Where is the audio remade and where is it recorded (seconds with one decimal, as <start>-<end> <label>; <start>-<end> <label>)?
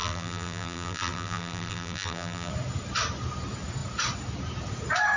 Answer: 0.0-2.5 remade; 2.5-5.2 recorded